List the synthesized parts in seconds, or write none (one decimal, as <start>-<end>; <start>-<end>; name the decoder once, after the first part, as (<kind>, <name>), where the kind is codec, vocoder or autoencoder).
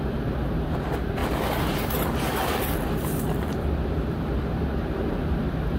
0.0-1.2 (vocoder, BigVGAN v2); 4.5-5.8